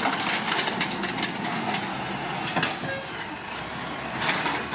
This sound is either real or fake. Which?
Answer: real